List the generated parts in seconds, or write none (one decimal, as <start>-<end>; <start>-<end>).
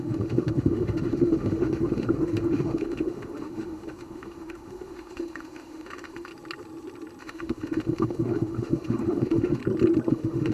0.0-6.3; 7.2-9.6; 10.1-10.5